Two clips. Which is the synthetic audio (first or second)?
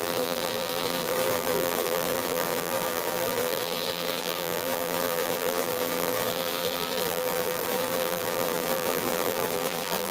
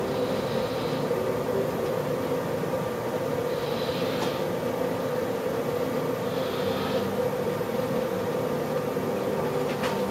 first